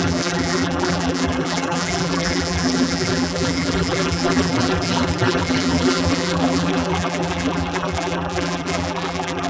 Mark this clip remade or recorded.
remade